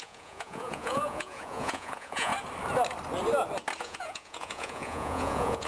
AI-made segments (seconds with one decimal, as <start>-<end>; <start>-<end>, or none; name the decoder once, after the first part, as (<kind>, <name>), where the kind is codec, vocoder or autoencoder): 0.0-2.3 (vocoder, Vocos); 3.8-5.7